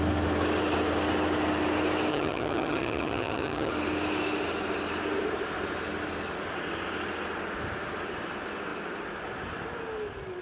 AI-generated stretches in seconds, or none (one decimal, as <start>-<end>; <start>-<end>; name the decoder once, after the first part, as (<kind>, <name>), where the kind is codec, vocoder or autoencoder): 2.1-3.7 (vocoder, HiFi-GAN)